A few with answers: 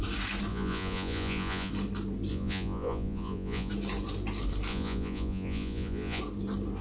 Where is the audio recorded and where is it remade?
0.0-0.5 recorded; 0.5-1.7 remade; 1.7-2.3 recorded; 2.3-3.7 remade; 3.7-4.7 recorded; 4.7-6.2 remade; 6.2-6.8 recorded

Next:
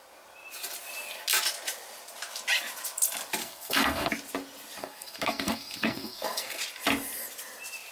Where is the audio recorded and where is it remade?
0.0-3.4 recorded; 3.4-4.1 remade; 4.1-4.8 recorded; 4.8-6.6 remade; 6.6-7.9 recorded